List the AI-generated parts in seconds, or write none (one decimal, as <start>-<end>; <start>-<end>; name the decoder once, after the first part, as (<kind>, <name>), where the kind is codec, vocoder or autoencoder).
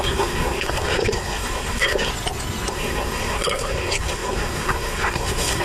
0.0-2.1 (codec, SNAC); 2.7-5.6